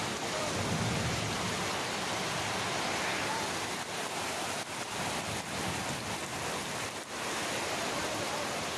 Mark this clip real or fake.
real